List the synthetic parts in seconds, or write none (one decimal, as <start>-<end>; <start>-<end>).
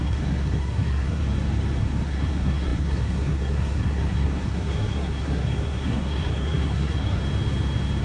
0.0-1.2; 1.8-7.2